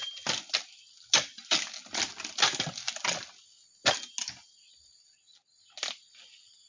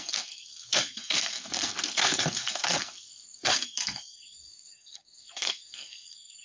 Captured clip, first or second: first